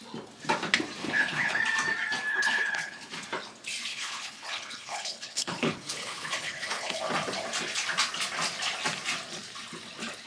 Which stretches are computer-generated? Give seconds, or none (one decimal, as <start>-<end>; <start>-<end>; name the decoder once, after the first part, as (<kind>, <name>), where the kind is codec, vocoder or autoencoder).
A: 1.0-1.6 (codec, HILCodec); 2.3-3.1; 3.9-7.0